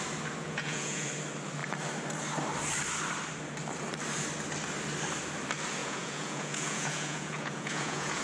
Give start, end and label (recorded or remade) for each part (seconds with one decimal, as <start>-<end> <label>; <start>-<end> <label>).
0.0-0.4 recorded; 0.4-1.1 remade; 1.1-5.8 recorded; 5.8-8.2 remade